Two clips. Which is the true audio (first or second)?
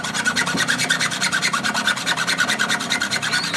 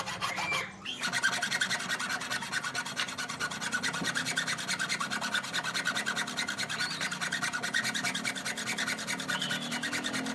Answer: second